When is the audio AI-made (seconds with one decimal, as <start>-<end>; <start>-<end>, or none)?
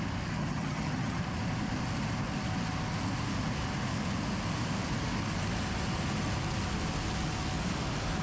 0.4-1.2